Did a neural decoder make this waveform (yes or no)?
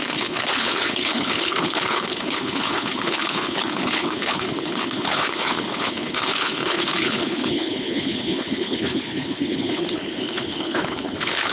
yes